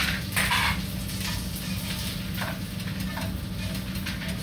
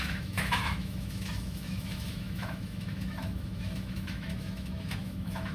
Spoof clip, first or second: second